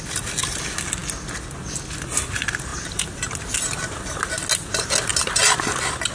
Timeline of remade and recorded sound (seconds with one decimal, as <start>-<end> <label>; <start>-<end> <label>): 0.0-6.1 recorded